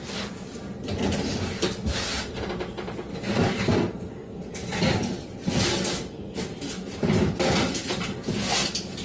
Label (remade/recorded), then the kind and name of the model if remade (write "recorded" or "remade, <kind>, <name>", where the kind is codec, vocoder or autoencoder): recorded